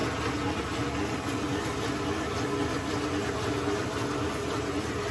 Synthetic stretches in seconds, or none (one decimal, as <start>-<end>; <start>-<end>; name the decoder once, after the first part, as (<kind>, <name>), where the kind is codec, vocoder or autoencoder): none